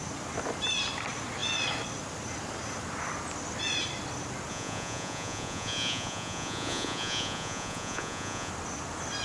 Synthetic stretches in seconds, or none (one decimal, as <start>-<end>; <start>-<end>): 4.5-8.5